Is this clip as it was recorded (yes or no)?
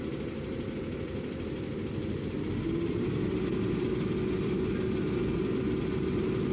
yes